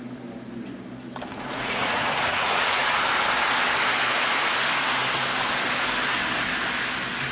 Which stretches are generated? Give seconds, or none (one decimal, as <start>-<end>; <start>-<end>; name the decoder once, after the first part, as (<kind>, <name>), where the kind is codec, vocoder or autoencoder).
1.3-3.0 (vocoder, Vocos)